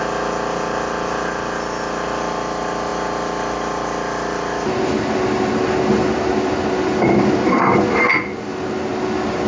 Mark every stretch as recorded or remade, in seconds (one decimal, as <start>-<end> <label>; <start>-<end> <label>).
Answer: 0.0-9.5 recorded